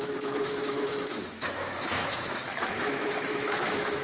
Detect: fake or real fake